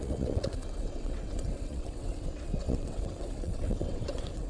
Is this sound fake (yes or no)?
yes